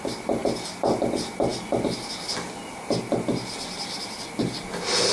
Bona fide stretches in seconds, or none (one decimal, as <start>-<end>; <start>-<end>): 0.0-5.1